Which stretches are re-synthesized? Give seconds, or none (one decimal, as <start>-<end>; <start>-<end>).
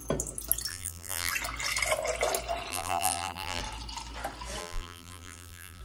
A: 0.7-1.3; 2.7-3.6; 4.6-5.8